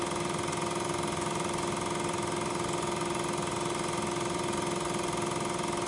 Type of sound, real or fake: real